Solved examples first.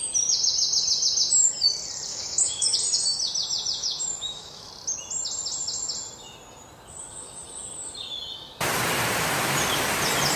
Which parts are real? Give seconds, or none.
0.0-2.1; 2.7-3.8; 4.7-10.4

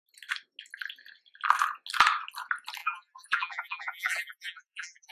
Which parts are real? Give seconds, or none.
0.0-2.8